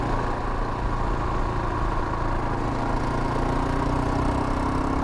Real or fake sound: real